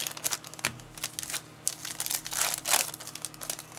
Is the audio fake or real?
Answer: real